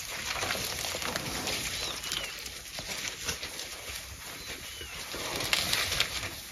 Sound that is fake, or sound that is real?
real